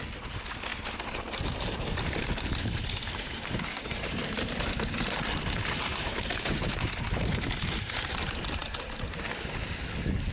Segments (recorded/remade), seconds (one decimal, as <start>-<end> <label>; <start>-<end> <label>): 0.0-0.7 recorded; 0.7-4.7 remade; 4.7-5.9 recorded; 5.9-8.1 remade; 8.1-10.3 recorded